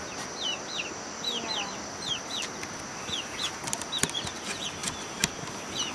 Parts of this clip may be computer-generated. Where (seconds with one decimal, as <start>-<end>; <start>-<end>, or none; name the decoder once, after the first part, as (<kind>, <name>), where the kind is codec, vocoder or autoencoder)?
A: 4.8-5.3 (vocoder, BigVGAN v2)